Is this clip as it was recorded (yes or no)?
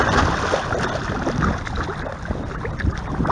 yes